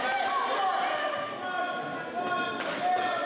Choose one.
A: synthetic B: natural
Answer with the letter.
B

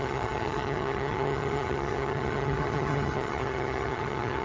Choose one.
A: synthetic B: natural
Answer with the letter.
A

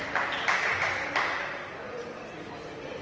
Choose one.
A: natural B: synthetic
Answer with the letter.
A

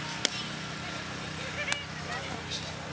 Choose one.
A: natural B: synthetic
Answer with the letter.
A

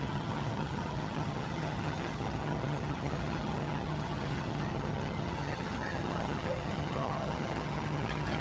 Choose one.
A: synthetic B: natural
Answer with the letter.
A